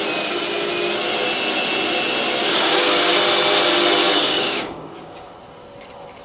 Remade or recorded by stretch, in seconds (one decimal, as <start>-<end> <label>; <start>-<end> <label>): 0.0-2.4 recorded; 2.4-3.1 remade; 3.1-4.0 recorded; 4.0-5.3 remade; 5.3-6.2 recorded